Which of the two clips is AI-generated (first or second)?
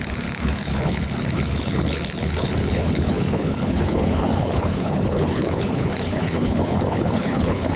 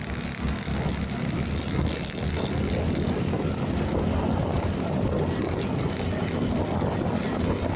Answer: first